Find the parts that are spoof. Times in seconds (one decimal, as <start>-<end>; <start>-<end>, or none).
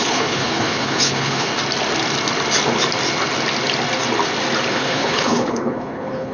0.0-1.5; 4.7-6.3